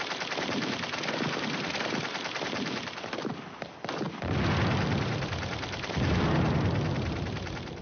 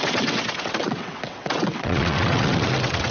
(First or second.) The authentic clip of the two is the first